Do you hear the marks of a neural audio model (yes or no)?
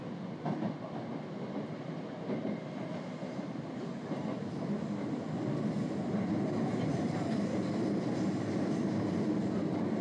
no